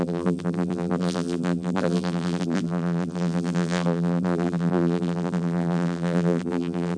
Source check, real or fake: fake